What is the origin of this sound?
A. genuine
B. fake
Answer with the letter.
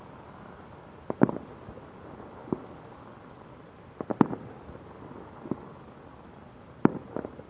A